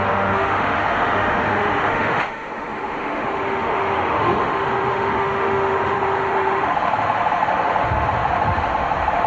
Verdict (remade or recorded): remade